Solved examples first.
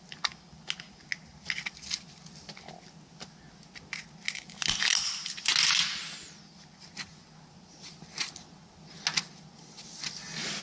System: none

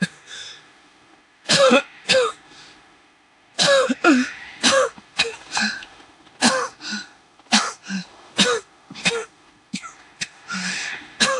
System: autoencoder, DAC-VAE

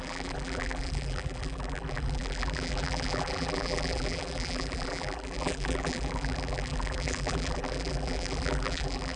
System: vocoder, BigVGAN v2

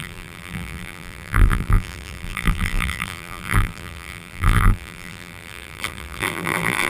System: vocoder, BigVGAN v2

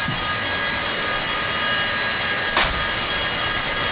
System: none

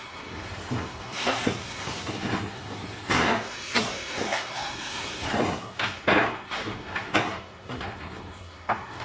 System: codec, SNAC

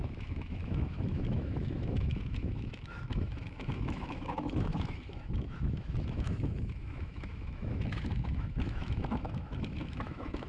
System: autoencoder, DAC-VAE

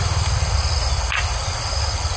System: none